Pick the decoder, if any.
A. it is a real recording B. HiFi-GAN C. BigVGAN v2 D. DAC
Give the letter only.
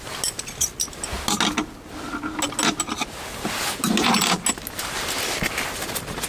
A